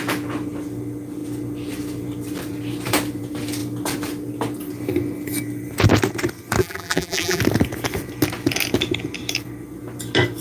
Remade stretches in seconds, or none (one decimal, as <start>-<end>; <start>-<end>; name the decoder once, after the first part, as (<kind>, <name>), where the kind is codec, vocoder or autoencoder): 6.6-7.4 (vocoder, BigVGAN v2)